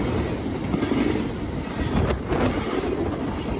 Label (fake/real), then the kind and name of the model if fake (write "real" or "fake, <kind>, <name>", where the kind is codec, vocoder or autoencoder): real